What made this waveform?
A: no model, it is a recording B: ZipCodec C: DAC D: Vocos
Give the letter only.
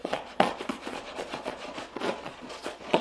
D